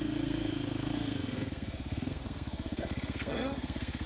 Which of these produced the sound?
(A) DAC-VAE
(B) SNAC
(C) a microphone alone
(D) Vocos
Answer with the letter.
B